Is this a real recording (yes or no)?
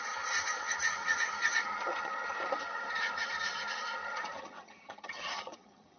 no